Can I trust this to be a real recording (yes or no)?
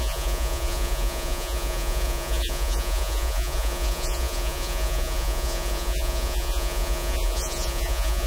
no